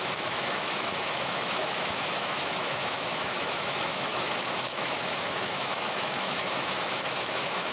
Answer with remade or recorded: remade